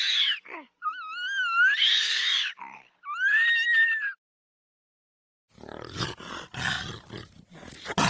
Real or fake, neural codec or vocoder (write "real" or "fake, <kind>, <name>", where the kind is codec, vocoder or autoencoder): real